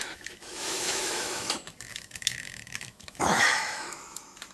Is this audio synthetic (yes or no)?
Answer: yes